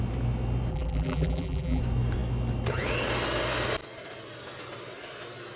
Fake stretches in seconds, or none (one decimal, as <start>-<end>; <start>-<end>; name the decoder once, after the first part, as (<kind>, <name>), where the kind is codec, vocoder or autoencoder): 0.7-1.8 (vocoder, BigVGAN v2)